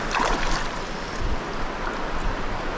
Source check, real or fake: real